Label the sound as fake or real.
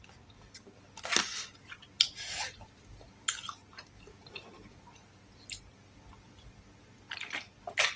real